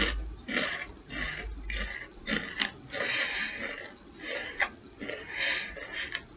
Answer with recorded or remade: recorded